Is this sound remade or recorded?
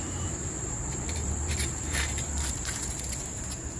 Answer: remade